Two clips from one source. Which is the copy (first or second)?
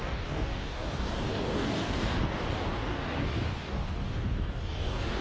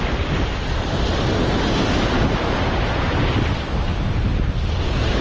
first